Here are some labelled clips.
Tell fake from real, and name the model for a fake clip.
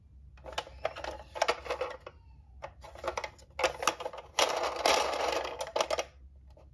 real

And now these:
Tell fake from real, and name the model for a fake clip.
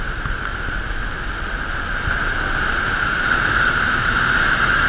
real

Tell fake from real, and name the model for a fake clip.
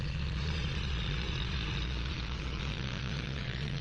fake, vocoder, Vocos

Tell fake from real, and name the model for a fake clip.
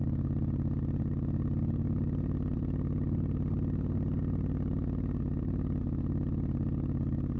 real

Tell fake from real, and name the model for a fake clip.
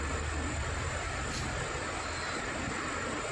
real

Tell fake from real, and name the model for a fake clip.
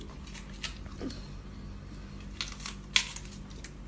real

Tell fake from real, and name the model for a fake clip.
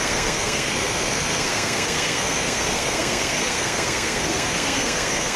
fake, codec, SNAC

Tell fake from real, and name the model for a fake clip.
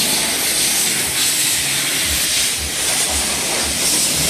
real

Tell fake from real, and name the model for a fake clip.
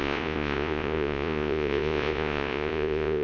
fake, vocoder, Vocos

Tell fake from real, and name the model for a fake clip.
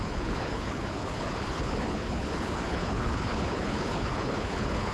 fake, codec, HILCodec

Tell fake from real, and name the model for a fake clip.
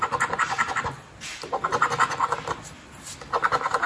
real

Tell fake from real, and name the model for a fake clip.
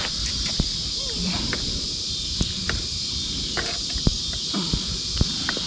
real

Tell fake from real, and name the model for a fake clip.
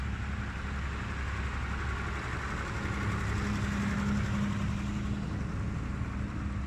real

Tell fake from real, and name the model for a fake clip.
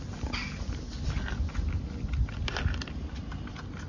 real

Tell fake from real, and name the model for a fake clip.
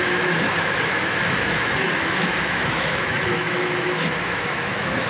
fake, autoencoder, DAC-VAE